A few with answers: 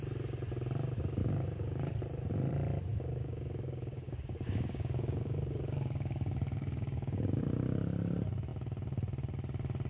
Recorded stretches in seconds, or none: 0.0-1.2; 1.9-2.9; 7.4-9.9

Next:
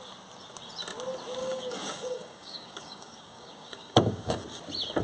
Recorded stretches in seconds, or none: 0.0-1.4; 4.4-5.0

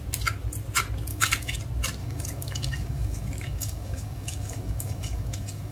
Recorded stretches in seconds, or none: 0.0-1.1; 1.6-2.0